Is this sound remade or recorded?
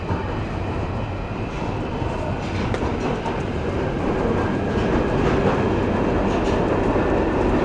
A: recorded